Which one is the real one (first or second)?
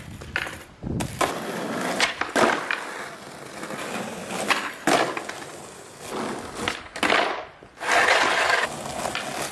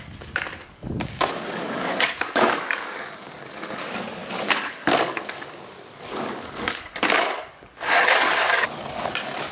first